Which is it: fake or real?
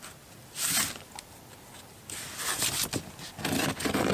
real